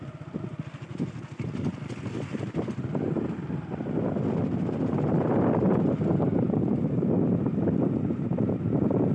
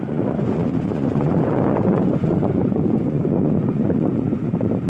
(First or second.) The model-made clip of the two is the second